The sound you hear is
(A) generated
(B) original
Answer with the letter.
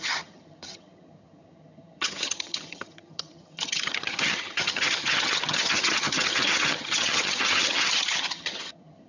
A